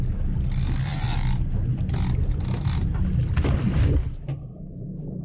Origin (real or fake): real